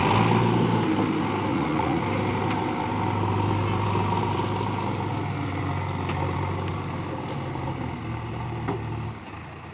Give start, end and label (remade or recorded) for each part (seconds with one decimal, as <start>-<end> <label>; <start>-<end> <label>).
0.0-1.5 recorded; 1.5-2.0 remade; 2.0-9.7 recorded